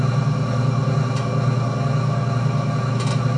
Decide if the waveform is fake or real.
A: real